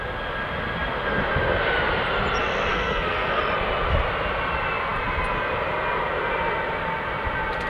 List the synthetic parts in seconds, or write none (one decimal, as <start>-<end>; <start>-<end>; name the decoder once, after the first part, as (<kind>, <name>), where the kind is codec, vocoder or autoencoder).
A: 2.7-3.4 (codec, SNAC)